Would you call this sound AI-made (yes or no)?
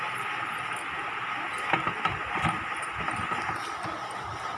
no